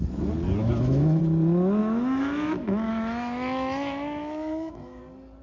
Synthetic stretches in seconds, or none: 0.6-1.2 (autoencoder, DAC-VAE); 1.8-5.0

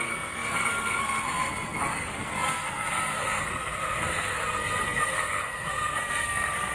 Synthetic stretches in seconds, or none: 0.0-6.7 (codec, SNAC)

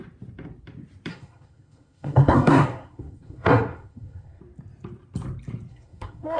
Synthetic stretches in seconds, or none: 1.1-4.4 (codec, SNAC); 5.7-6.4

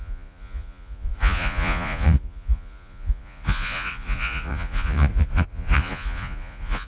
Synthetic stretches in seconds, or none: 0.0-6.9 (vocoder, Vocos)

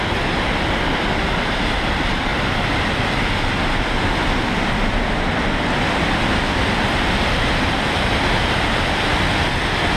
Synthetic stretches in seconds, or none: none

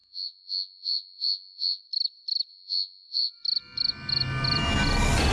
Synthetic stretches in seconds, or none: 0.0-1.8 (vocoder, Vocos); 2.5-3.3

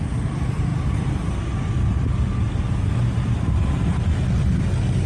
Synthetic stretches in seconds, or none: 0.0-0.7 (vocoder, BigVGAN v2); 2.3-3.9

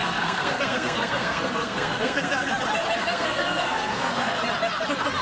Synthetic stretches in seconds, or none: 0.0-2.5 (codec, SNAC); 3.0-4.4